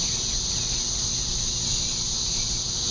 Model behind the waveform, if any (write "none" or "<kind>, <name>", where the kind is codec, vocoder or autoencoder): none